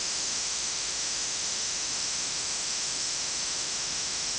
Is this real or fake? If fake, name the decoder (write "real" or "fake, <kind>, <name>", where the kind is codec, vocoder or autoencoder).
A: fake, autoencoder, DAC-VAE